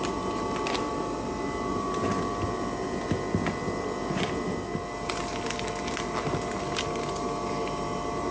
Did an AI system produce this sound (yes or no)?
no